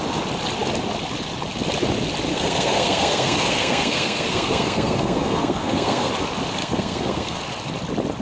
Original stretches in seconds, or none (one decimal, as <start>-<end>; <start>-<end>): 0.0-2.3; 6.1-6.6; 7.4-8.2